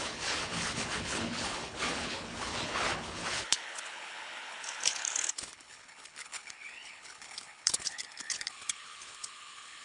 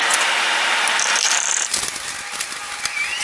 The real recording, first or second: second